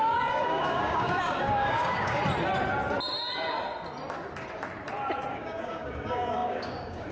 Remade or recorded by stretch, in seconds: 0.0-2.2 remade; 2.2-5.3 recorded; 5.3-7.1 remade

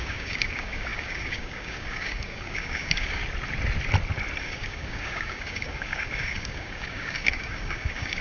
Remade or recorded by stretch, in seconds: 0.0-3.2 remade; 3.2-4.4 recorded; 4.4-8.2 remade

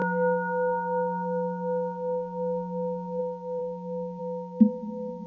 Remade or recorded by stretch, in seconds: 0.0-3.2 remade; 3.2-3.6 recorded; 3.6-4.2 remade; 4.2-5.3 recorded